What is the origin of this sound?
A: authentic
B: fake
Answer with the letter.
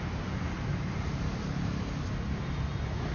A